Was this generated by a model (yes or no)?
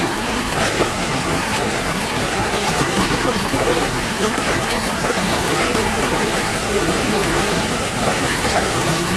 yes